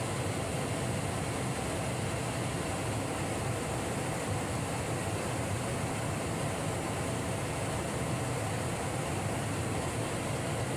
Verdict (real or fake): real